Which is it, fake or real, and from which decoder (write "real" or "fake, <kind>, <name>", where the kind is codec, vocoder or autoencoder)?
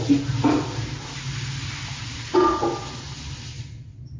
real